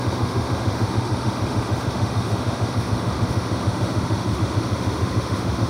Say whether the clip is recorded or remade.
remade